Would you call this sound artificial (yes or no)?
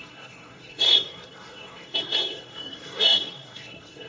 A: yes